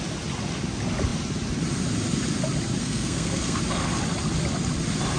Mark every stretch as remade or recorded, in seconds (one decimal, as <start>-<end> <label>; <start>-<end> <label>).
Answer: 0.0-2.8 recorded; 2.8-3.6 remade; 3.6-5.2 recorded